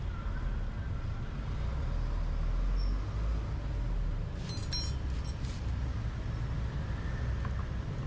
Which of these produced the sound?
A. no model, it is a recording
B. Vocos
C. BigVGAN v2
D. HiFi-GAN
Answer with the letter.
A